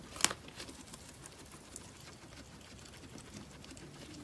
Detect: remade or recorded recorded